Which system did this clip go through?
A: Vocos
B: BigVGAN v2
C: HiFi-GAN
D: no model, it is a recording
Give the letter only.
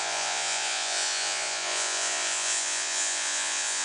A